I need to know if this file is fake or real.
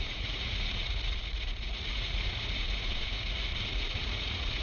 fake